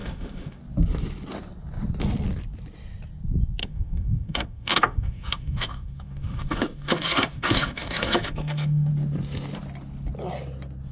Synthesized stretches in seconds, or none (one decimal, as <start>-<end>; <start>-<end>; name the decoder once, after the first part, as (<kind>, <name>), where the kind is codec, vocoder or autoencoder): 0.0-0.6 (autoencoder, DAC-VAE); 3.6-8.9